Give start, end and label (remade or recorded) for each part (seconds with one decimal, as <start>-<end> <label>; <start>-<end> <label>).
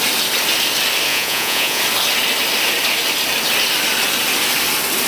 0.0-1.1 recorded; 1.1-1.8 remade; 1.8-5.1 recorded